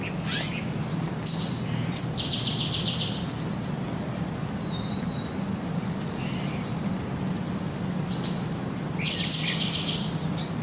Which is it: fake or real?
real